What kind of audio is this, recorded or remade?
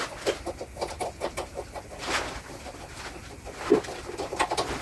recorded